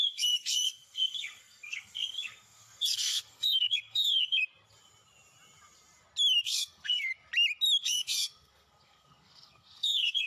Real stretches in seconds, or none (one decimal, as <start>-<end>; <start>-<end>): 4.4-6.4; 7.1-7.8